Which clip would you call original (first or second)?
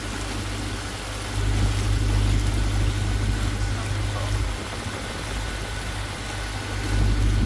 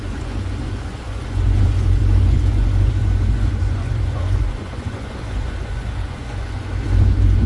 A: first